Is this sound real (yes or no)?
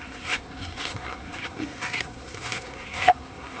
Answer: no